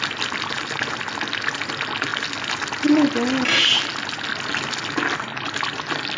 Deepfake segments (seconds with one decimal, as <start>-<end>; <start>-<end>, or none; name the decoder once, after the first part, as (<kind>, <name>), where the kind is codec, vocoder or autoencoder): none